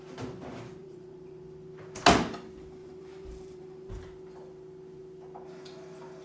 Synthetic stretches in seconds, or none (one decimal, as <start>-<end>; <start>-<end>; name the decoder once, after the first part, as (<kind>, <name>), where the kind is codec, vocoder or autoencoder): 0.8-1.4 (vocoder, BigVGAN v2); 2.8-3.9

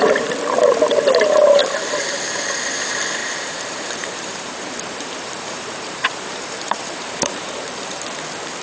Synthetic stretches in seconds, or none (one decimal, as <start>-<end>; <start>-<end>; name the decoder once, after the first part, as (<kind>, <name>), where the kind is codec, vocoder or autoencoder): 3.2-8.0 (vocoder, BigVGAN v2)

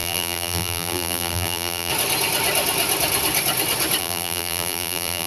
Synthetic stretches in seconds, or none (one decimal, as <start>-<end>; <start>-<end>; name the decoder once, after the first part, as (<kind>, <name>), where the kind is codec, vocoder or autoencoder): 0.0-1.9 (vocoder, BigVGAN v2); 4.0-5.3

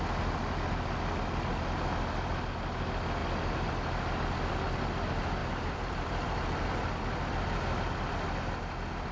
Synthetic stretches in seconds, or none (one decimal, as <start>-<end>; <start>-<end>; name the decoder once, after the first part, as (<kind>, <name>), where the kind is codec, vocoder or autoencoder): 5.4-6.9 (vocoder, BigVGAN v2)

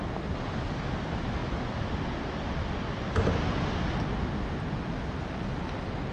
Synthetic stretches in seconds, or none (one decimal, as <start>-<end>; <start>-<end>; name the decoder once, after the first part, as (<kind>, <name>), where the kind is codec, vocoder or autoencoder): none

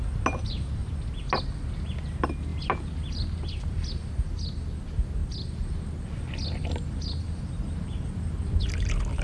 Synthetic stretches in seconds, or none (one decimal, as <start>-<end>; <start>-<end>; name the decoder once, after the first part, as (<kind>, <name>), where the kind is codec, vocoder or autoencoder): none